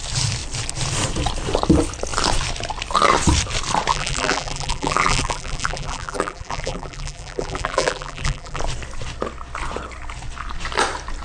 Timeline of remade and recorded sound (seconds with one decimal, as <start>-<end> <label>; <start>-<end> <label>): 0.0-3.9 recorded; 3.9-8.6 remade; 8.6-11.2 recorded